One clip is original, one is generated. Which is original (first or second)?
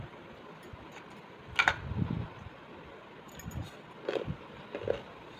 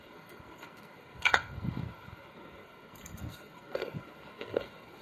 first